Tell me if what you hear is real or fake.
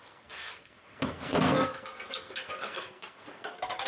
fake